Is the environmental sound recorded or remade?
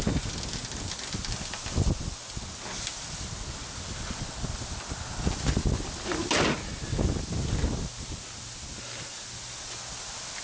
recorded